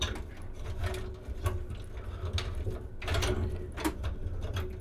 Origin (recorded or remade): recorded